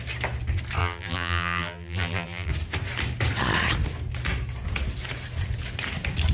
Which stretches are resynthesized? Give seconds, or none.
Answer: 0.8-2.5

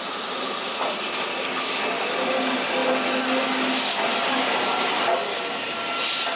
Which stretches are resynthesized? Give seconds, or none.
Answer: none

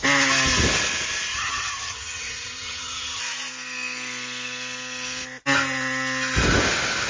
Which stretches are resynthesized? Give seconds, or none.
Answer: 1.3-3.2

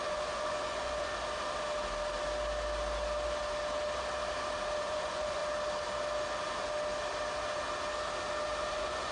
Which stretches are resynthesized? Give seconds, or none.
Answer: 0.0-1.1; 4.8-5.4; 8.7-9.1

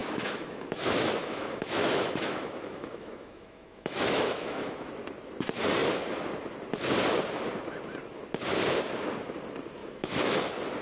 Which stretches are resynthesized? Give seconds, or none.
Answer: 0.0-4.9; 9.8-10.4

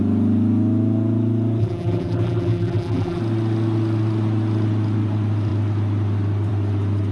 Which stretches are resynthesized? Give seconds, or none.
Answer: 1.6-3.2

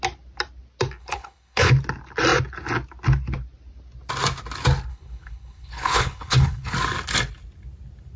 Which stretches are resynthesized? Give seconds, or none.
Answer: 1.0-1.7; 4.9-6.7